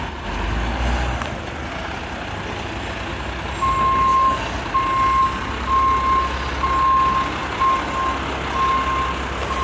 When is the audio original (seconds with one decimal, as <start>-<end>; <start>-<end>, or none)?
0.0-9.6